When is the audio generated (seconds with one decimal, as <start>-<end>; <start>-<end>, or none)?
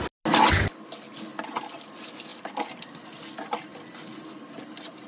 none